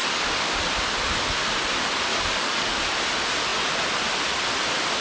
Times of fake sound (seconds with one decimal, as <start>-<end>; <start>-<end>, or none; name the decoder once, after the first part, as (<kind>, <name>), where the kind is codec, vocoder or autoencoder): 0.0-0.5 (codec, DAC); 2.1-2.8